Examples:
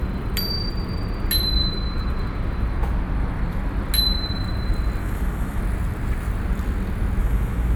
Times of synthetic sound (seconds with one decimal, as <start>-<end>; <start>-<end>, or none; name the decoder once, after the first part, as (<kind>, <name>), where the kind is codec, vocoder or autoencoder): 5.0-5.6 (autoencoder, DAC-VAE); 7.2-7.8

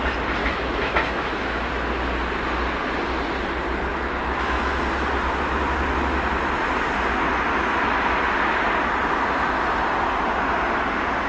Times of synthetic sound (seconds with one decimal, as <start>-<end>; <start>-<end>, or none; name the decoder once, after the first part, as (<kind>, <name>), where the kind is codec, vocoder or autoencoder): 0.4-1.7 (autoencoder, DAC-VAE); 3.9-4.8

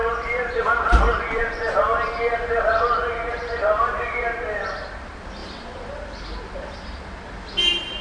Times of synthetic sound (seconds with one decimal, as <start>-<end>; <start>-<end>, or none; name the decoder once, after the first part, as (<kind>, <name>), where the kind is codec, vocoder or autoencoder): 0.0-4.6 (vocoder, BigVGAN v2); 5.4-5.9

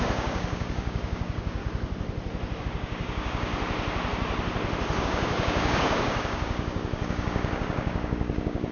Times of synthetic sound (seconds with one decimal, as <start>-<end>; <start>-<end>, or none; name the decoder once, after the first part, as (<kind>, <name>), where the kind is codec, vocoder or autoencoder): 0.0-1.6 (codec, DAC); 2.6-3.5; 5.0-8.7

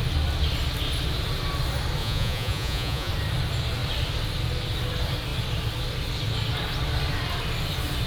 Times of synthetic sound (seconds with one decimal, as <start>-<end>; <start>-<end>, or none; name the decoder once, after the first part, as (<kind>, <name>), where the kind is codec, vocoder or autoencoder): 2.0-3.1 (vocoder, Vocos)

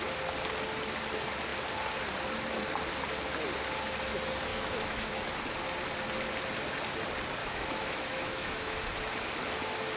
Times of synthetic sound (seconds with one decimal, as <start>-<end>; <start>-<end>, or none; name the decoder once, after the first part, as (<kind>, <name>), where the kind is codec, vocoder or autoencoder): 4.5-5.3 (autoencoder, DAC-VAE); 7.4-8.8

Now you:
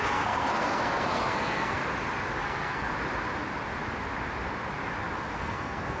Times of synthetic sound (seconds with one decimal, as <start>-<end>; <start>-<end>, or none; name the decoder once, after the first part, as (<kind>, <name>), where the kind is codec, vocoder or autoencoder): 0.0-1.8 (codec, SNAC); 2.4-2.9; 5.3-6.0